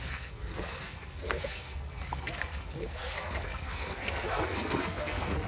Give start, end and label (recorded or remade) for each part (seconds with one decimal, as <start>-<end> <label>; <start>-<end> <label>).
0.0-5.5 remade

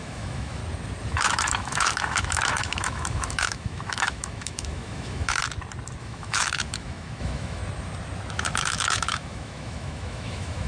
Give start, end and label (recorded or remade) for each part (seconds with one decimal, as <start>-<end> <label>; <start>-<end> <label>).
0.0-0.6 remade; 0.6-1.1 recorded; 1.1-5.4 remade; 5.4-6.0 recorded; 6.0-7.6 remade; 7.6-8.3 recorded; 8.3-10.7 remade

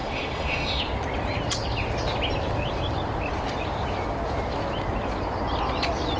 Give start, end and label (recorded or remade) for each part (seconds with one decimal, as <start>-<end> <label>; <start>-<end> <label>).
0.0-0.8 remade; 0.8-6.2 recorded

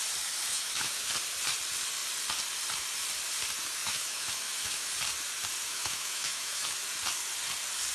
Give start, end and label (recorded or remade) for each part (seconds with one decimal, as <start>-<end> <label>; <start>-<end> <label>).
0.0-0.5 recorded; 0.5-1.1 remade; 1.1-3.8 recorded; 3.8-4.9 remade; 4.9-5.7 recorded; 5.7-6.8 remade; 6.8-7.9 recorded

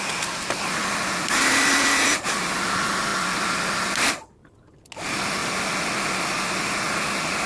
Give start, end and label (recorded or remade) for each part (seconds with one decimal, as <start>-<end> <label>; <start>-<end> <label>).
0.0-7.5 recorded